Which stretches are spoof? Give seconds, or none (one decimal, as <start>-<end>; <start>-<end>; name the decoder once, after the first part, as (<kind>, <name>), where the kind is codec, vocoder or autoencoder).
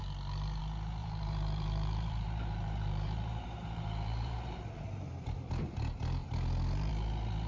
1.0-5.5 (vocoder, BigVGAN v2); 6.2-6.9